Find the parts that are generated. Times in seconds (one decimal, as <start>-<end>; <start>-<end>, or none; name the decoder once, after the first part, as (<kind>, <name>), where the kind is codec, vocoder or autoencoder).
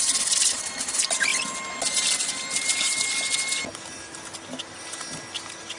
none